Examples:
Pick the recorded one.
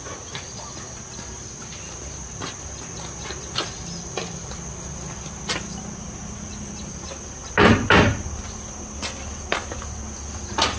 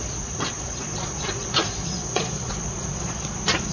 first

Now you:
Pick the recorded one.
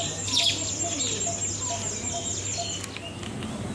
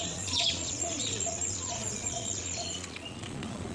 first